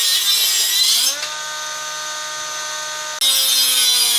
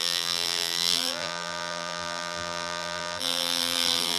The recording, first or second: first